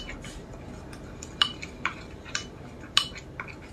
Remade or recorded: remade